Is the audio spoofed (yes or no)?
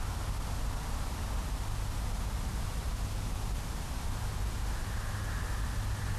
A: no